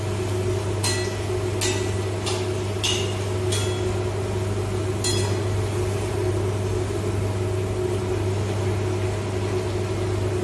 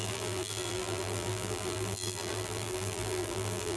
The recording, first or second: first